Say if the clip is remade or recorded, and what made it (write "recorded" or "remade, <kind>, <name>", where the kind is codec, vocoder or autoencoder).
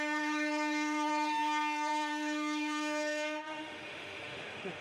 remade, autoencoder, DAC-VAE